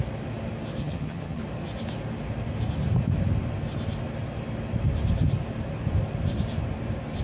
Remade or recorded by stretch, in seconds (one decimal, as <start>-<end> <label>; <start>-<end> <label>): 0.0-0.8 recorded; 0.8-1.4 remade; 1.4-7.2 recorded